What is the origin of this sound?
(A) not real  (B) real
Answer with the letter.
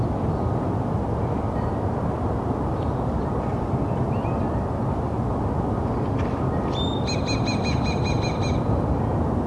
B